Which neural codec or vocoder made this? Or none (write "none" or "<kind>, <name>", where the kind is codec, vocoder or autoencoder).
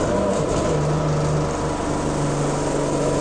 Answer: none